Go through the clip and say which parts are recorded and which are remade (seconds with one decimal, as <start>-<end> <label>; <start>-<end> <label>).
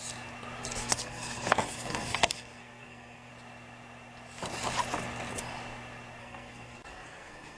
0.0-0.8 recorded; 0.8-3.3 remade; 3.3-6.2 recorded; 6.2-7.6 remade